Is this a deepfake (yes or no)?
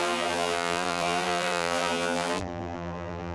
yes